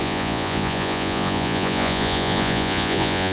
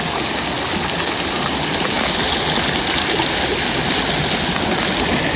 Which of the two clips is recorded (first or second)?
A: second